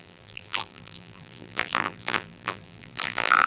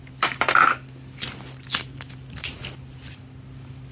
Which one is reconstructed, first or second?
first